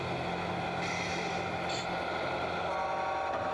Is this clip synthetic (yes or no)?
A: no